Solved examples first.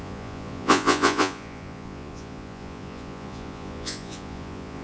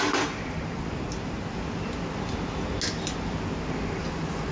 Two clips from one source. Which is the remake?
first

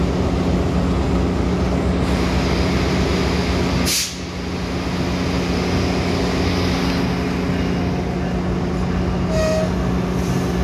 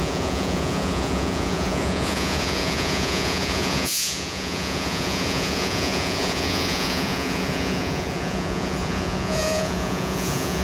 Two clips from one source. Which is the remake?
second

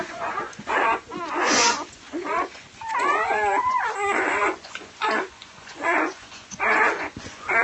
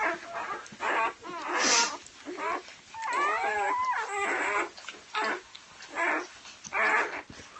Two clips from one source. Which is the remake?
first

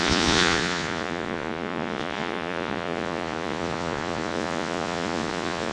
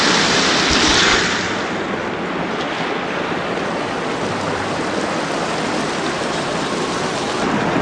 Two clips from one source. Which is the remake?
first